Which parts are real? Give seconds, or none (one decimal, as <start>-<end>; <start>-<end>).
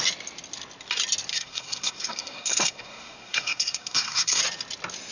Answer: 0.0-1.3; 4.4-5.1